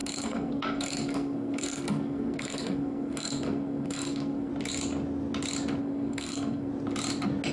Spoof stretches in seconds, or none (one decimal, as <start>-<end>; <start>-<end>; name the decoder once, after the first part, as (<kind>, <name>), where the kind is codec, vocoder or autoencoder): 0.0-4.5 (codec, SNAC); 5.8-6.7